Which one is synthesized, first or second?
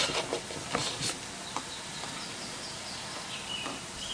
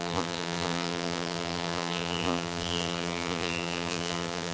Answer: second